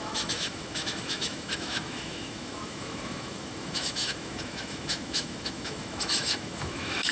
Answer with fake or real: fake